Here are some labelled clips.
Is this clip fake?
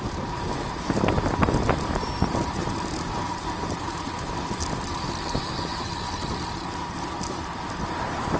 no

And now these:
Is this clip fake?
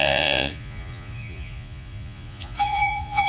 yes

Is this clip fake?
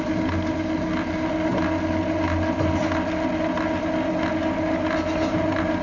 no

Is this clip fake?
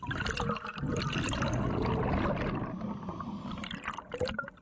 no